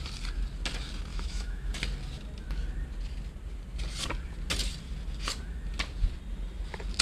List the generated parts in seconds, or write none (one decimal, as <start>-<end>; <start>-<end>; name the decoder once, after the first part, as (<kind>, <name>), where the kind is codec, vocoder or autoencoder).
1.1-1.7 (autoencoder, DAC-VAE)